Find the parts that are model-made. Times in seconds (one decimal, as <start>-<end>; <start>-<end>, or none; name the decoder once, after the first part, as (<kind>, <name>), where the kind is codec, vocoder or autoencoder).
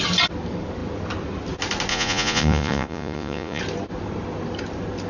1.9-3.6 (vocoder, Vocos)